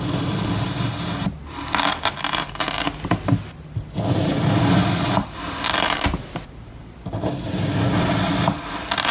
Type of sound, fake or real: real